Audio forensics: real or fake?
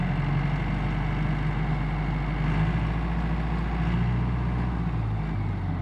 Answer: real